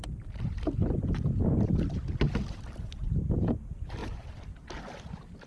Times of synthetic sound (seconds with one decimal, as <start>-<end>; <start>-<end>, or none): 0.0-2.2; 4.0-4.8